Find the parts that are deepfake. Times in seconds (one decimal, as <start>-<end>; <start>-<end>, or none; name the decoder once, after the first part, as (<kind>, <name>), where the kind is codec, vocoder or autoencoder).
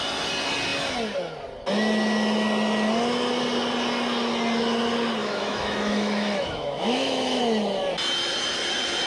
5.2-7.4 (autoencoder, DAC-VAE)